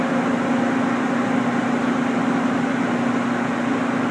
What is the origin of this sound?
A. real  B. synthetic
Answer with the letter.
A